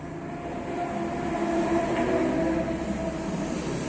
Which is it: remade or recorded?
recorded